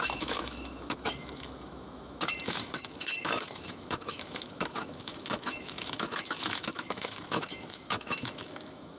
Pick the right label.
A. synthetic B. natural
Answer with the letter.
A